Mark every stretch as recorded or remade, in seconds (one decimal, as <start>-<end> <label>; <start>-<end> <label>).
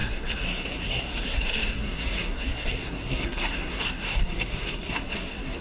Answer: 0.0-5.6 remade